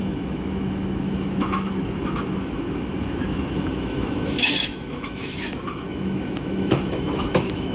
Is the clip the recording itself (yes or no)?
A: no